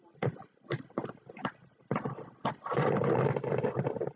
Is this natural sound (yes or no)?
yes